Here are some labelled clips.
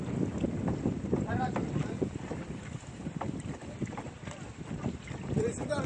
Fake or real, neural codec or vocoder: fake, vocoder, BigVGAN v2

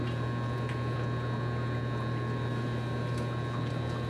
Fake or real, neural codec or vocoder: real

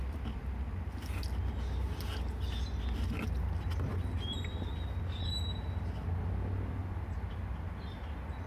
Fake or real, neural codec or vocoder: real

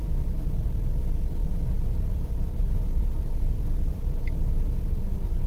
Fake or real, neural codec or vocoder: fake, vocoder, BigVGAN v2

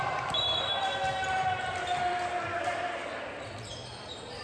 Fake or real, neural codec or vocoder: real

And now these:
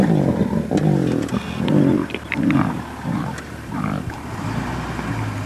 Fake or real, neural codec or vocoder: real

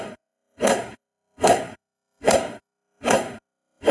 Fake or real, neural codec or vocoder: fake, codec, SNAC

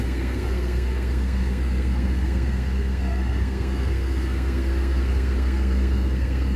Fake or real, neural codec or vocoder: fake, codec, SNAC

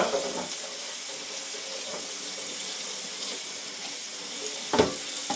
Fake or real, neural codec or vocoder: real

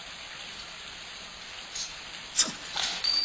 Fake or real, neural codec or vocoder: real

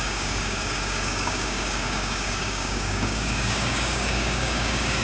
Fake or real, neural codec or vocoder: fake, codec, DAC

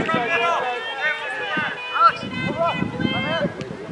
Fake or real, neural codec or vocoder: real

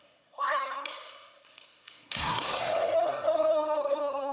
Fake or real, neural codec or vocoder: fake, codec, SNAC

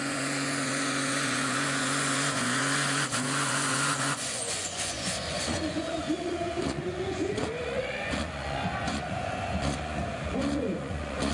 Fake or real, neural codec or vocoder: fake, vocoder, Vocos